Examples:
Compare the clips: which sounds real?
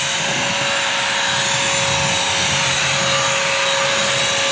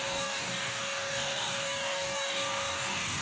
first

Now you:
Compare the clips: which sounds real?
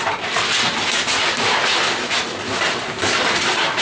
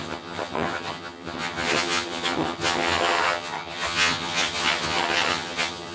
first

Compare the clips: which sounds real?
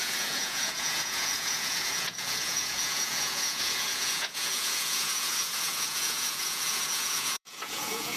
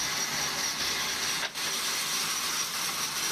second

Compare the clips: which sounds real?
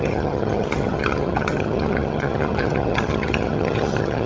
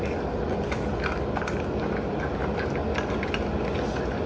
second